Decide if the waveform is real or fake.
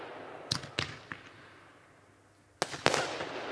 real